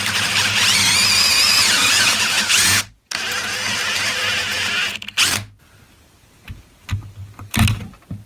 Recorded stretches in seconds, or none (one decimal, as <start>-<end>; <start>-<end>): 0.0-1.3; 2.9-4.5; 5.1-8.3

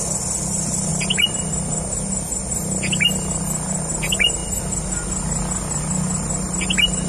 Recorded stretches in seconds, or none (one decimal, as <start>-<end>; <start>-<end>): 0.0-0.9; 1.5-7.1

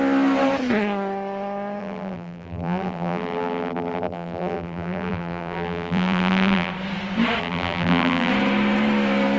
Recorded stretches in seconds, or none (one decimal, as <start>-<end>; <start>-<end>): 0.0-1.8; 6.7-7.4; 8.3-9.4

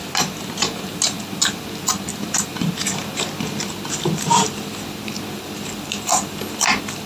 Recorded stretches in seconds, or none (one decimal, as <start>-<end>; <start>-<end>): 1.2-2.1; 2.8-7.1

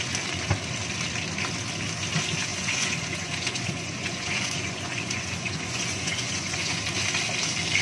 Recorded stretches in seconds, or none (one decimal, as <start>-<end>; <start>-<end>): 0.0-2.5; 6.8-7.8

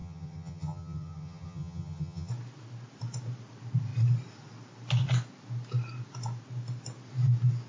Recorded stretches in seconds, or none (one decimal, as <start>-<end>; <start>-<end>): 2.3-7.7

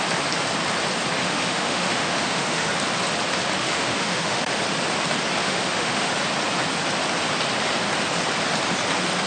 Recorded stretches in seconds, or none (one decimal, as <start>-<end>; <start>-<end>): 0.0-1.2; 2.7-3.6; 4.6-5.4; 6.1-9.3